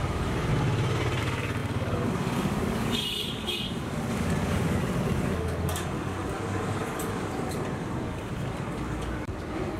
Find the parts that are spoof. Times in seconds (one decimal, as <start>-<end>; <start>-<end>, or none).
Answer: 0.0-0.5; 1.2-9.8